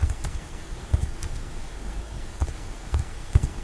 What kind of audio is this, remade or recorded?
remade